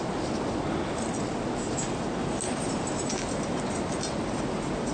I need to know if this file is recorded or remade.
recorded